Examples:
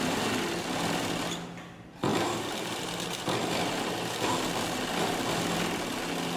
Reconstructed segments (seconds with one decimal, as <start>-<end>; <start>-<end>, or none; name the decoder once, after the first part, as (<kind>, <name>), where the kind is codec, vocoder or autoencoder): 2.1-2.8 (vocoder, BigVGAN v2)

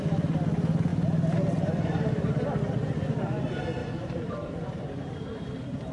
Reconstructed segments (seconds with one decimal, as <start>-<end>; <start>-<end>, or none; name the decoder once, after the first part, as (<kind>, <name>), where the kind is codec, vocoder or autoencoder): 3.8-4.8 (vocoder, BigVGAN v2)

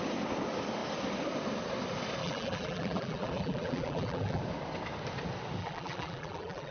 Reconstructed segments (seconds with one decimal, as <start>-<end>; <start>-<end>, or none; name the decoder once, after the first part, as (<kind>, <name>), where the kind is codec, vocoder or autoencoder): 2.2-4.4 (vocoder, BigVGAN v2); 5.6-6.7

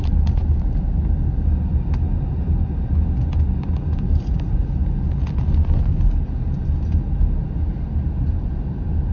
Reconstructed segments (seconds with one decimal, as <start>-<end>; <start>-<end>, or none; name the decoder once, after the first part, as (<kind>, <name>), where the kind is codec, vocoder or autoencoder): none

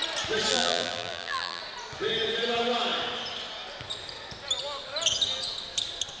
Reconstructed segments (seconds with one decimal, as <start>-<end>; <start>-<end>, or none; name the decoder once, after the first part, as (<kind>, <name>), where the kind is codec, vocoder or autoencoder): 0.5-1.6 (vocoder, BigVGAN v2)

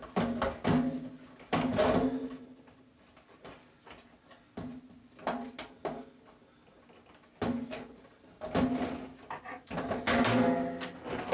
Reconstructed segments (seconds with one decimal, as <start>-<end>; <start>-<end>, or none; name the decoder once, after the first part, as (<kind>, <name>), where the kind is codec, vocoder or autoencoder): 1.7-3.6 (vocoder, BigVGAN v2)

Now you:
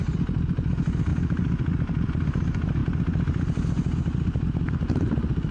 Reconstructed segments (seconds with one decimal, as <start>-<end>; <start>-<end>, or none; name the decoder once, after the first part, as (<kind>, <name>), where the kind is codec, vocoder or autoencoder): 0.0-2.8 (vocoder, BigVGAN v2); 4.6-5.5

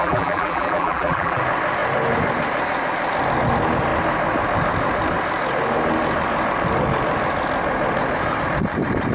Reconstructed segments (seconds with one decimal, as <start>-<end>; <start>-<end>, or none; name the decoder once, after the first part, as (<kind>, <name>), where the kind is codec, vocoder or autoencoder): 0.0-1.4 (vocoder, BigVGAN v2)